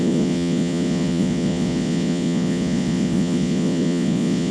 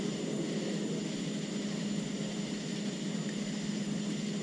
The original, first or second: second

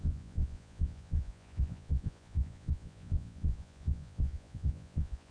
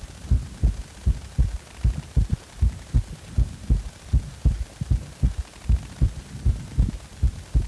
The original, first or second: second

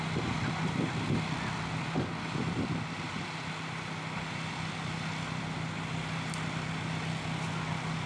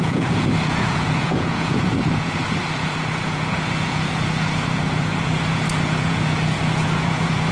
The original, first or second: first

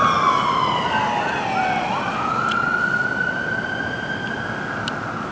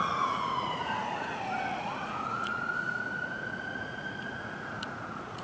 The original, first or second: first